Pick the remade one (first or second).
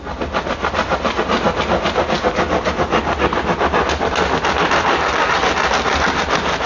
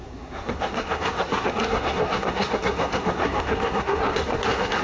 second